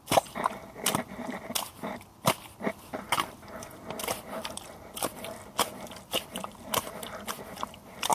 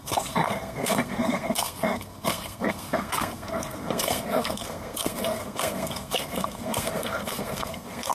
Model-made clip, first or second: second